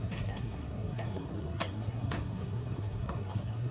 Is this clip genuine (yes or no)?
no